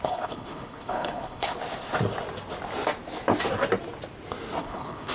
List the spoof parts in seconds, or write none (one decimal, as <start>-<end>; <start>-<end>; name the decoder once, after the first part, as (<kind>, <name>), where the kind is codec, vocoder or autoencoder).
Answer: 0.0-1.5 (codec, HILCodec); 4.6-5.1